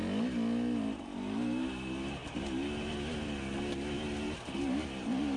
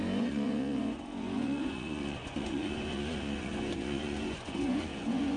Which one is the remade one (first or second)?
second